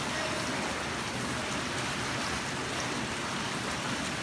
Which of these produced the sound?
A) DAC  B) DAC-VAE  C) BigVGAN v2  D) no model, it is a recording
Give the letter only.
D